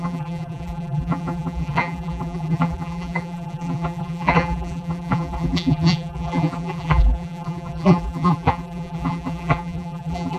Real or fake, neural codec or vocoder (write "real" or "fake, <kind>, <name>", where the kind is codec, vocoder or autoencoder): fake, vocoder, BigVGAN v2